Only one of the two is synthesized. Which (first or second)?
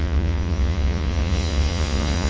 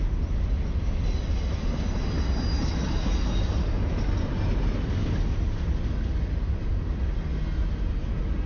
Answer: first